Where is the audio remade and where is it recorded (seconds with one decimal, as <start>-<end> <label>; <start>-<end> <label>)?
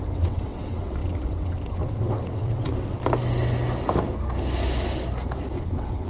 0.0-3.0 remade; 3.0-5.6 recorded; 5.6-6.1 remade